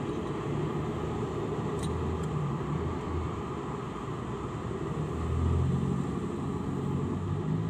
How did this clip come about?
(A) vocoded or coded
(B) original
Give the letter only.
B